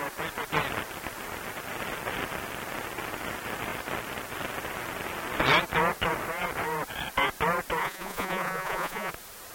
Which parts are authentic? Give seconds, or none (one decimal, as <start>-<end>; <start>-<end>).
0.0-7.8; 9.1-9.5